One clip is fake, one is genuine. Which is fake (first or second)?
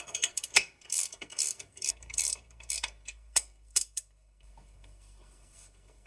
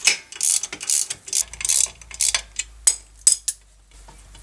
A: first